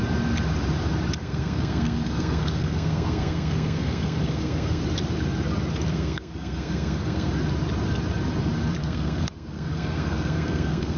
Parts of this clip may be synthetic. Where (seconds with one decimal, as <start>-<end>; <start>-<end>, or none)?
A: 1.2-4.8; 5.9-7.3; 8.8-11.0